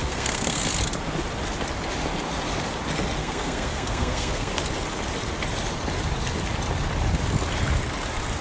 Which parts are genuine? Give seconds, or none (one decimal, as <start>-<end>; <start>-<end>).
0.6-3.2; 4.5-8.4